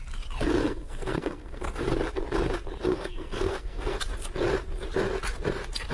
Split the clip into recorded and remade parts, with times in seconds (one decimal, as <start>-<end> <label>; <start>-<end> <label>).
0.0-0.6 recorded; 0.6-1.9 remade; 1.9-2.9 recorded; 2.9-4.0 remade; 4.0-5.9 recorded